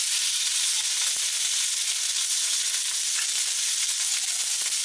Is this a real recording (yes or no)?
yes